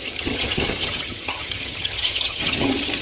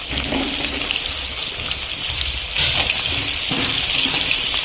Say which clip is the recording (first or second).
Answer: second